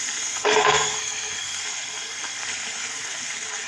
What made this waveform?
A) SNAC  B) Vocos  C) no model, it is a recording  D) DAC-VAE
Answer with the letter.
A